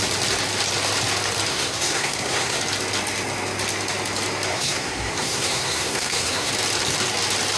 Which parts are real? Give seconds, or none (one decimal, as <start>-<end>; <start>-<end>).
0.0-1.5; 2.6-4.5; 6.5-7.6